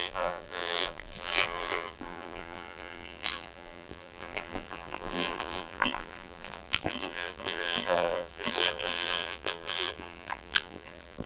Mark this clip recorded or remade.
remade